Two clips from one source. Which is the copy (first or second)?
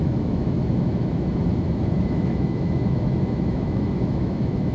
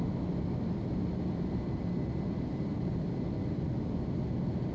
first